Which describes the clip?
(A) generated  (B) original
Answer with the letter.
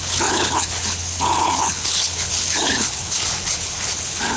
A